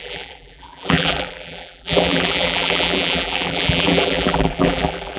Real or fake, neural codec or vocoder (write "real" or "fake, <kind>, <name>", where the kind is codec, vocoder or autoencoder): fake, vocoder, BigVGAN v2